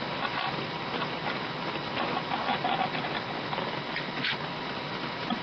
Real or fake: real